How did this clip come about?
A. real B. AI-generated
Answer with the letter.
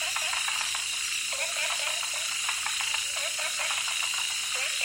A